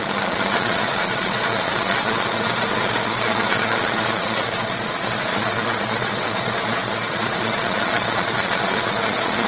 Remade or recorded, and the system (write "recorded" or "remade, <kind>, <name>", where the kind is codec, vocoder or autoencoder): remade, vocoder, Vocos